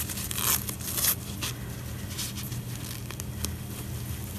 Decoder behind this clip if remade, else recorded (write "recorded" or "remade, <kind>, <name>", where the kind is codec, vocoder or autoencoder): recorded